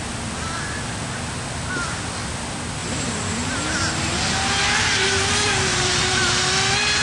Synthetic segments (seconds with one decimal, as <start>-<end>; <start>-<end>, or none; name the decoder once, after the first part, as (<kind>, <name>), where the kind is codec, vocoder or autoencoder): 2.8-3.8 (vocoder, BigVGAN v2); 5.7-6.3